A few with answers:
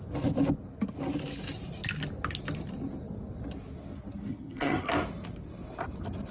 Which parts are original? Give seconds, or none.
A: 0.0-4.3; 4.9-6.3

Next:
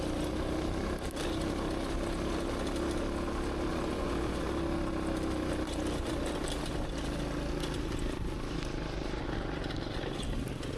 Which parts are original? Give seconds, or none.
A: 0.0-3.7; 4.5-10.8

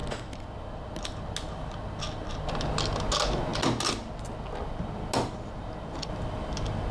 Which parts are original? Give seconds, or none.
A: 0.0-6.9

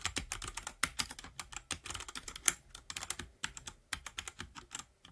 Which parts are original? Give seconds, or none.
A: 0.0-5.1